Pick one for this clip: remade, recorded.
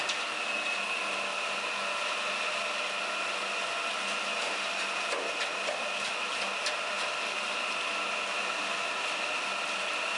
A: recorded